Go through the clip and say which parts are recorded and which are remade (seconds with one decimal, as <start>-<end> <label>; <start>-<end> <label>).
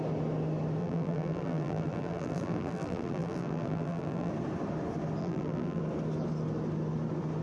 0.0-0.8 recorded; 0.8-4.3 remade; 4.3-5.2 recorded; 5.2-5.8 remade; 5.8-7.4 recorded